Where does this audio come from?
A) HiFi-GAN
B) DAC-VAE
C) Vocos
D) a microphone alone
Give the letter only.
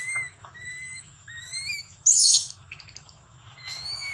B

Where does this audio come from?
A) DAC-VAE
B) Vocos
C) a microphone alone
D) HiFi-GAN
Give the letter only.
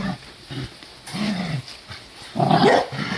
C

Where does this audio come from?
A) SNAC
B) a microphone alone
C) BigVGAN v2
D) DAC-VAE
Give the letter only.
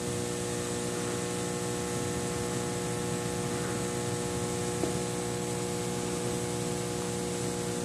B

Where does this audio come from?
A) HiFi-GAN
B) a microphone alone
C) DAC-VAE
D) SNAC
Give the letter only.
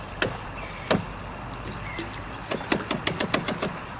B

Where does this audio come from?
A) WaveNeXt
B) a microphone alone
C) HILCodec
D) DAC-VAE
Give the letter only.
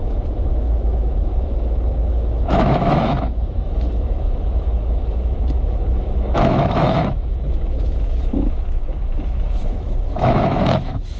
D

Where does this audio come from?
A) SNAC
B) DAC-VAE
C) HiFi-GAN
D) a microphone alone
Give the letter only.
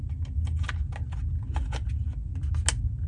D